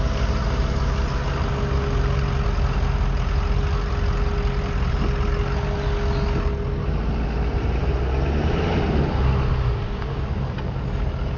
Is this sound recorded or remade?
recorded